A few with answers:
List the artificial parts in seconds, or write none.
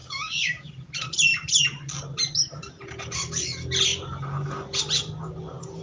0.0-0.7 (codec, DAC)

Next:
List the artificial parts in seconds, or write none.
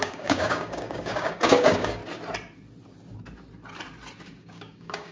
0.0-2.0 (codec, DAC); 4.4-5.1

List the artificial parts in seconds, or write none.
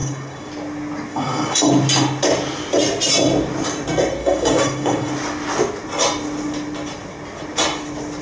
0.0-0.5 (codec, DAC); 1.1-1.7; 4.2-5.1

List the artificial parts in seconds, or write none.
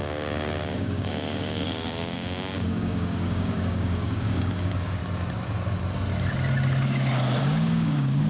0.0-5.0 (codec, DAC); 7.4-8.3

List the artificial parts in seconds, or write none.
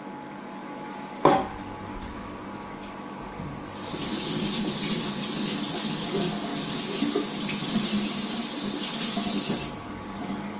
0.0-3.9 (codec, DAC); 5.7-6.5; 9.8-10.6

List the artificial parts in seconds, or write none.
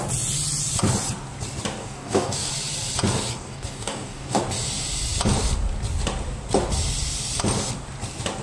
1.8-2.5 (codec, DAC); 3.3-4.4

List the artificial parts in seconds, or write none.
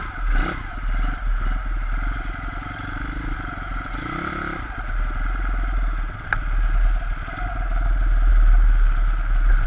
none